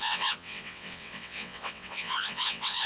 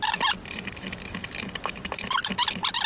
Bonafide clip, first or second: second